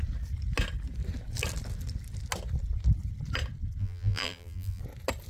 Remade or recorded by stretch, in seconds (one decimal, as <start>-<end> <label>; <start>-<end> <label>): 0.0-3.8 recorded; 3.8-4.8 remade; 4.8-5.3 recorded